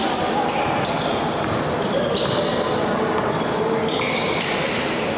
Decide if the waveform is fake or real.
real